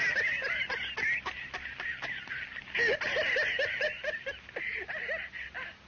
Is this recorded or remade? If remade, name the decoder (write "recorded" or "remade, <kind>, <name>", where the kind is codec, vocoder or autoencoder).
recorded